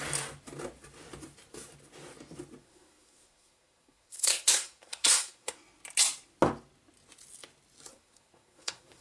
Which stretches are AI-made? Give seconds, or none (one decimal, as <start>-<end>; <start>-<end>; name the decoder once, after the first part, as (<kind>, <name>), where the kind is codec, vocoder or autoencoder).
2.6-5.6 (codec, SNAC); 7.9-9.0